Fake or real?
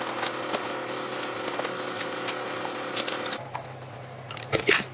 real